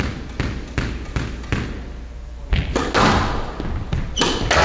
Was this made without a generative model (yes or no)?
yes